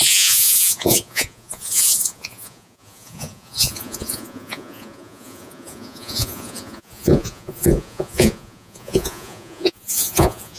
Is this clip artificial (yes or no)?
yes